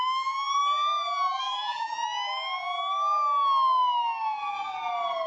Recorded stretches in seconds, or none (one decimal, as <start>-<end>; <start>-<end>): 0.6-1.4; 1.9-5.3